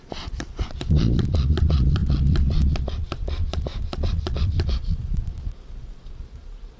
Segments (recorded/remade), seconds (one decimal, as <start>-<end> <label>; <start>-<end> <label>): 0.0-6.8 remade